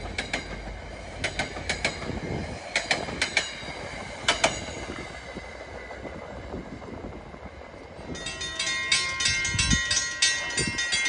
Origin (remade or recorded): recorded